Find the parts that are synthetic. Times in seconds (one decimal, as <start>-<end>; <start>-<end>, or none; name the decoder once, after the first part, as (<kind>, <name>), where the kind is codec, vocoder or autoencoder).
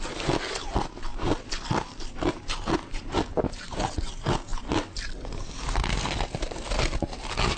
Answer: 4.5-5.0 (vocoder, BigVGAN v2)